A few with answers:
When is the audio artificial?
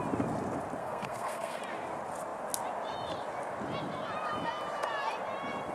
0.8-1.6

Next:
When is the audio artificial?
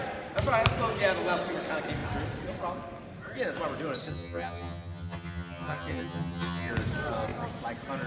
4.1-6.7